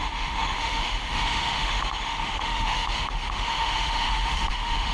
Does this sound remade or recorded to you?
remade